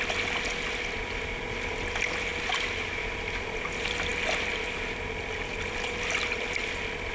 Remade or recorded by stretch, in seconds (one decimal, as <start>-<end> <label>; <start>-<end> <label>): 0.0-7.1 recorded